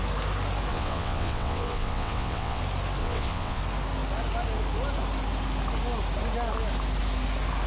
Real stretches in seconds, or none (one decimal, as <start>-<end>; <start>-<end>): 0.0-0.7; 2.6-3.0; 3.6-7.7